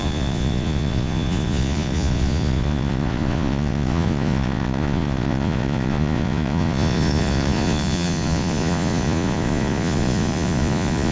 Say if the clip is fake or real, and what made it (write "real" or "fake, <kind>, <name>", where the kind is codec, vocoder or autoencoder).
fake, vocoder, Vocos